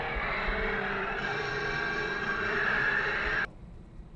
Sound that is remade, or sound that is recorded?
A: remade